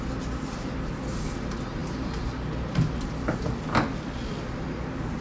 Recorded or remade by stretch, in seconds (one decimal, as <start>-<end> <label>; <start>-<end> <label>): 0.0-5.2 recorded